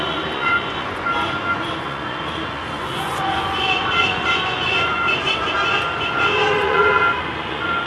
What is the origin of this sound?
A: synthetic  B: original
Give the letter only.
A